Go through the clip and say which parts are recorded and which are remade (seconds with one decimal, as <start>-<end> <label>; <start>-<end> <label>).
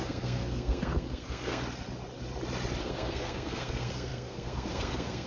0.0-1.6 remade; 1.6-2.8 recorded; 2.8-5.3 remade